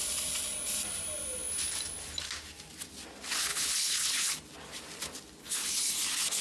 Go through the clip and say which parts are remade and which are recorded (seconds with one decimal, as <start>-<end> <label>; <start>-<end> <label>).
0.0-3.5 recorded; 3.5-4.3 remade; 4.3-5.4 recorded; 5.4-5.9 remade; 5.9-6.4 recorded